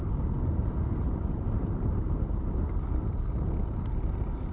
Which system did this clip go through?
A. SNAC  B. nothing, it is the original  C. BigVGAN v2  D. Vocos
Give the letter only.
B